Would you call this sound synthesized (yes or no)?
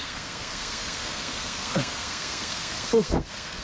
yes